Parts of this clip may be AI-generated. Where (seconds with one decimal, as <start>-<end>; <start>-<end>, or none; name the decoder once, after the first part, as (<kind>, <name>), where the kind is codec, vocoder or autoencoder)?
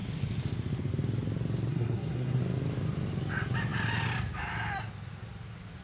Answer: 1.7-2.4 (codec, SNAC)